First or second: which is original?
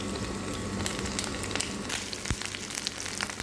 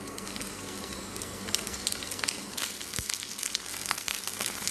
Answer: first